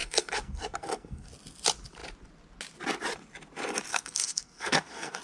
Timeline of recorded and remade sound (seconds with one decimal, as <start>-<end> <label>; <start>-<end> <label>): 0.0-1.3 remade; 1.3-3.9 recorded; 3.9-5.2 remade